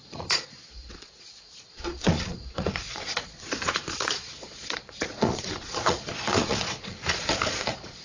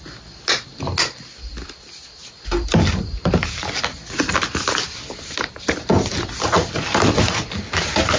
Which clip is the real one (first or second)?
second